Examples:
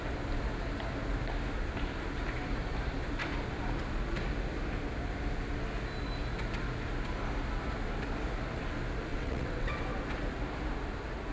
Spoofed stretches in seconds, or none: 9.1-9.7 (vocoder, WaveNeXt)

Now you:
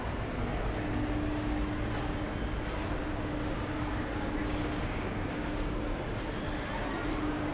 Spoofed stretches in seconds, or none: 3.0-3.9 (codec, DAC); 4.4-6.0